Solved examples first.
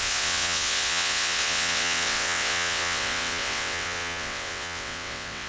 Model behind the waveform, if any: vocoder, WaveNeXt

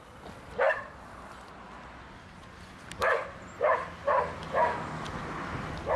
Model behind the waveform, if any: none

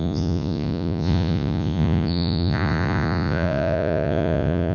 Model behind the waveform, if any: vocoder, Vocos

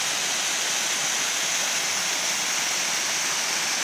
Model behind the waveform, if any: none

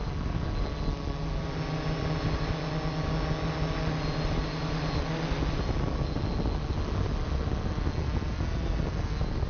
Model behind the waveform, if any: none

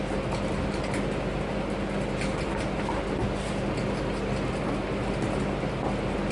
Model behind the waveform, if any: none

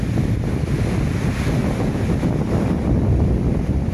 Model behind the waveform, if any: none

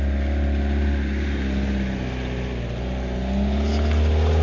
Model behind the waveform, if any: none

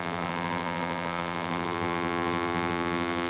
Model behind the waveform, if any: vocoder, BigVGAN v2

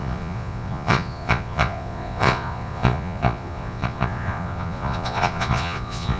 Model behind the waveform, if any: vocoder, Vocos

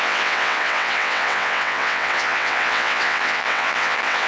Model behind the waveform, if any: vocoder, WaveNeXt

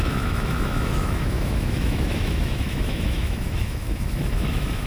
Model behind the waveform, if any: autoencoder, DAC-VAE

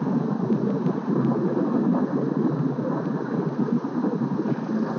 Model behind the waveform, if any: none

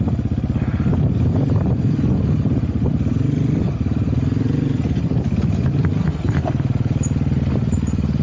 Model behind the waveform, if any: none